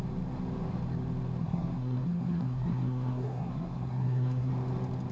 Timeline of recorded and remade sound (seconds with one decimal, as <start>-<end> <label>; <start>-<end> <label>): 0.0-1.4 recorded; 1.4-4.5 remade; 4.5-5.1 recorded